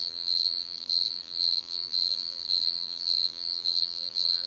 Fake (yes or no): yes